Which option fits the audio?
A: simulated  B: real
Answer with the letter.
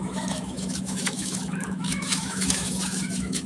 A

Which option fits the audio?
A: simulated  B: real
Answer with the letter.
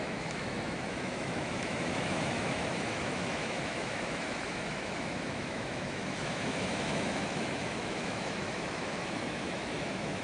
A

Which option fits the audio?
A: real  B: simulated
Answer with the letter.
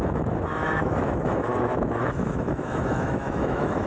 B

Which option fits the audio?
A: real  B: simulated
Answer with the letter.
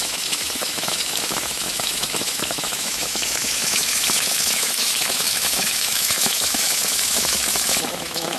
B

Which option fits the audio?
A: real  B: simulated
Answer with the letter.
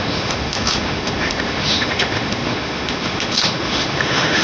B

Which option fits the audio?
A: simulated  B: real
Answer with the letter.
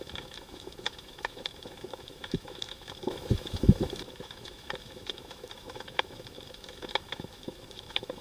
A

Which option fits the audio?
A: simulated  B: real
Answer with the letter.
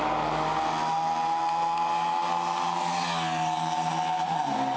B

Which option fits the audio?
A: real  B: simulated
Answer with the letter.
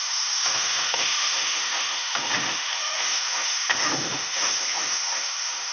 B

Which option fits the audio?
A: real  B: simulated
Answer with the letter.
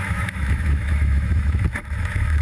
B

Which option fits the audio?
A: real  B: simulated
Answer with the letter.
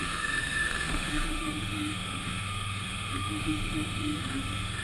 B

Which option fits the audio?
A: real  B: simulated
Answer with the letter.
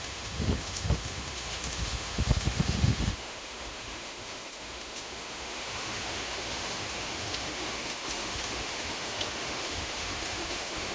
B